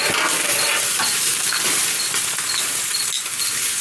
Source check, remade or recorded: recorded